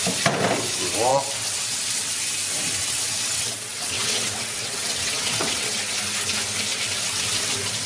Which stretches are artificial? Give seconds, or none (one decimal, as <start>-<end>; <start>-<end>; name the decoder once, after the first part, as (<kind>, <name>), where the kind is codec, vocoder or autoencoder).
1.1-1.8 (vocoder, WaveNeXt); 2.8-5.8; 6.7-7.5